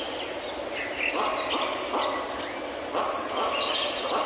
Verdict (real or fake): real